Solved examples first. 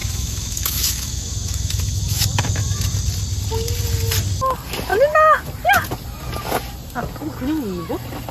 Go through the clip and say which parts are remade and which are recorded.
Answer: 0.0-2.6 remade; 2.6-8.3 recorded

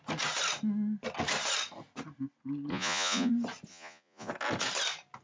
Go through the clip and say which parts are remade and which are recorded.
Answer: 0.0-2.7 recorded; 2.7-3.3 remade; 3.3-3.7 recorded; 3.7-4.3 remade; 4.3-5.2 recorded

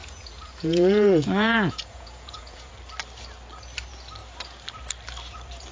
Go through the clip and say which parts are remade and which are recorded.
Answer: 0.0-2.7 remade; 2.7-5.7 recorded

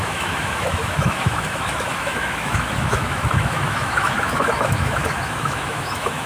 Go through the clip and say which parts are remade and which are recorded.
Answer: 0.0-6.3 remade

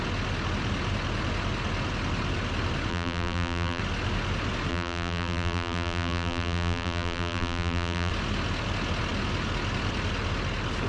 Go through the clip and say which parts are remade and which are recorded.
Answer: 0.0-2.9 recorded; 2.9-3.8 remade; 3.8-4.7 recorded; 4.7-8.1 remade; 8.1-10.9 recorded